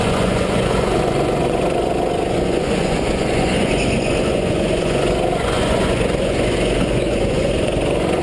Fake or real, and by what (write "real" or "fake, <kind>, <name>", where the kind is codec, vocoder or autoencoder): fake, vocoder, Vocos